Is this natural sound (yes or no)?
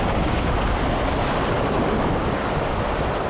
yes